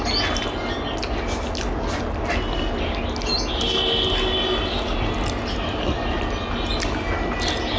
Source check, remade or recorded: recorded